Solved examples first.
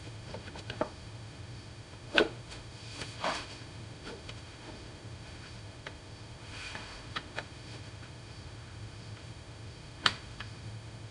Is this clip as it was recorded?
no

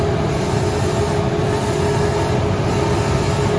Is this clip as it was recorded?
yes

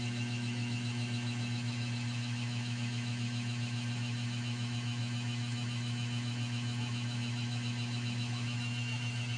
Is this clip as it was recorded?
no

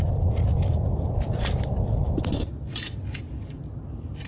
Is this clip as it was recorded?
yes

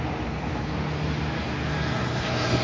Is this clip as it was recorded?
yes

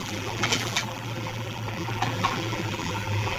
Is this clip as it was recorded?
no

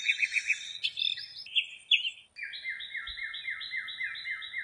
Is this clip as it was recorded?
yes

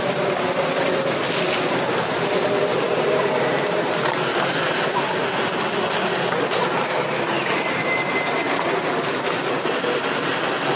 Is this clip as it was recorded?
yes